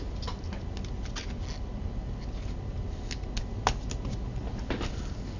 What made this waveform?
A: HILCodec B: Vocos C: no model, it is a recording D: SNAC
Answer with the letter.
C